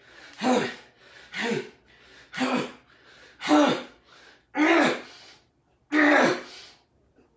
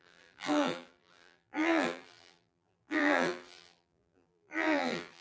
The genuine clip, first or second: first